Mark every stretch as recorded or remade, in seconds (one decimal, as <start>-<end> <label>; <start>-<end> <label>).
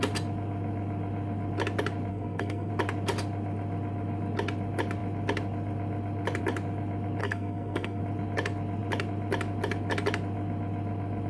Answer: 0.0-2.1 recorded; 2.1-2.7 remade; 2.7-7.2 recorded; 7.2-8.0 remade; 8.0-11.3 recorded